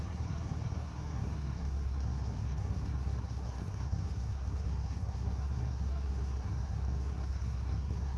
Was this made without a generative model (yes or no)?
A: no